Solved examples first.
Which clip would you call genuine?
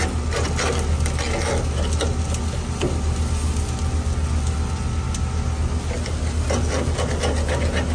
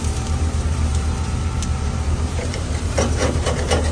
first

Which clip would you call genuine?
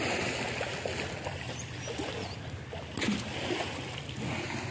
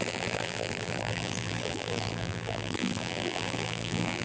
first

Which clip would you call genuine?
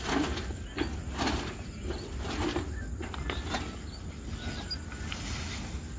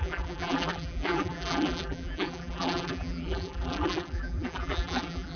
first